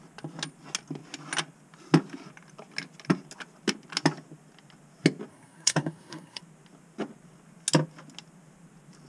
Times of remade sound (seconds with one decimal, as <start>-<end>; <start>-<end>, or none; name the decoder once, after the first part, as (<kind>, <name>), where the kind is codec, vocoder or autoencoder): 5.3-6.4 (codec, SNAC)